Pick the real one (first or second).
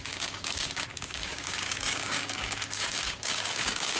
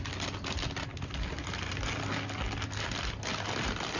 second